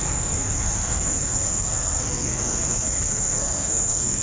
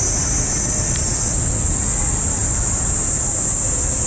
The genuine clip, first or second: second